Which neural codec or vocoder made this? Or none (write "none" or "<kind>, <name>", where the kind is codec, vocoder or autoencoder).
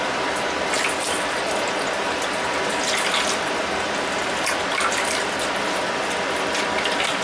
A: none